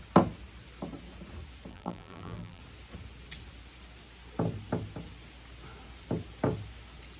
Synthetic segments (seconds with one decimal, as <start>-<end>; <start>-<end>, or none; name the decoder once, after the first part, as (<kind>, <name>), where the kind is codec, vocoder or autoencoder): 1.7-2.6 (vocoder, BigVGAN v2)